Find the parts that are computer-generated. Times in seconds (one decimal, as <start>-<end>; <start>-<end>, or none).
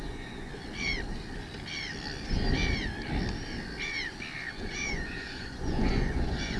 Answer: 0.0-0.5; 4.5-6.6